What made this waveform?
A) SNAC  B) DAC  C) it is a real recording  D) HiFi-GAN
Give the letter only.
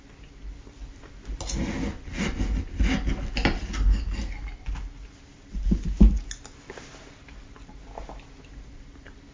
C